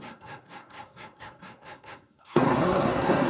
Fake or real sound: fake